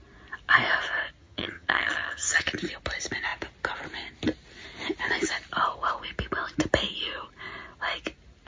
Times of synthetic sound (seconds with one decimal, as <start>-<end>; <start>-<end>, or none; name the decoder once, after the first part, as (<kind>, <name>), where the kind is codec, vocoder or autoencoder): 1.2-2.5 (vocoder, HiFi-GAN)